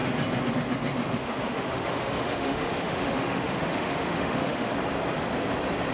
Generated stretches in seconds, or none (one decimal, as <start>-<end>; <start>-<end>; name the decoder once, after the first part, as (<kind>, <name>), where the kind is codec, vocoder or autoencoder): 1.2-4.7 (autoencoder, DAC-VAE)